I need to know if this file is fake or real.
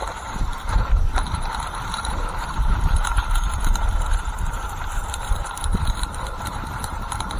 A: fake